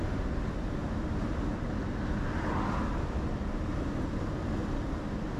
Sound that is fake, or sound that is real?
real